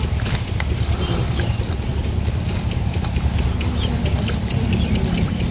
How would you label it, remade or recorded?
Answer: recorded